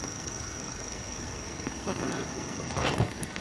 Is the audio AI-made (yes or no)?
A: yes